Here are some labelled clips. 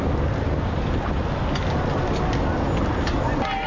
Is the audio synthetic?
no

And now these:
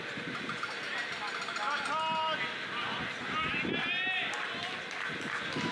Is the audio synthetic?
no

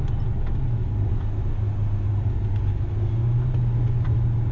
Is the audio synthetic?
no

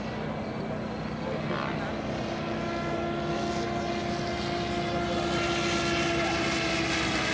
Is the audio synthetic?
no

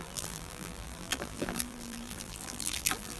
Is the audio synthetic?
yes